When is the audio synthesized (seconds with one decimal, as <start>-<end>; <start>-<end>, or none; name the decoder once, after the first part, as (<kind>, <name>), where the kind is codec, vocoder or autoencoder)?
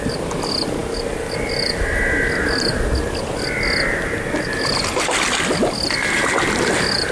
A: none